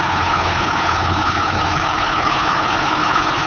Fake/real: fake